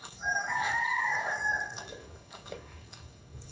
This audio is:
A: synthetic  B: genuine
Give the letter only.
A